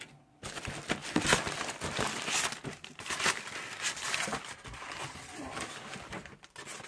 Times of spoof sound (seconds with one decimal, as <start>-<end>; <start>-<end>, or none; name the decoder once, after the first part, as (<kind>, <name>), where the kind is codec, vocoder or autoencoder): none